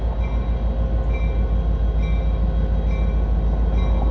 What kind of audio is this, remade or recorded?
recorded